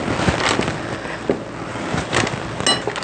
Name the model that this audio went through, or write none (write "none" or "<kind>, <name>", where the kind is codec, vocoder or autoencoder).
none